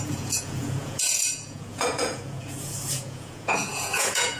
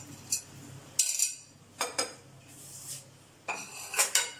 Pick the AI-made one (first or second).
first